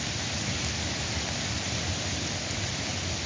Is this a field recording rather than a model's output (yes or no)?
yes